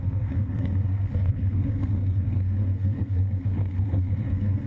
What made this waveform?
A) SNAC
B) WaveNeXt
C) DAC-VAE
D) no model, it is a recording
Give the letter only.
A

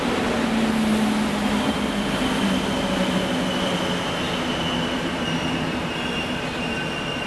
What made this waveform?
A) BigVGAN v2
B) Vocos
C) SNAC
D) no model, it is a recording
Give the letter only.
D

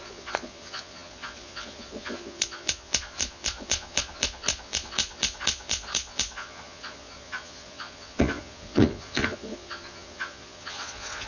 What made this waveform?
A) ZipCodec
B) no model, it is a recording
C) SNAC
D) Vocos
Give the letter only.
D